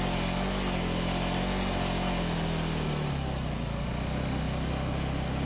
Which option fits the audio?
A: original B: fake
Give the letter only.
A